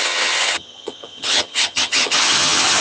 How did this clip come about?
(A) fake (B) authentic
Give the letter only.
A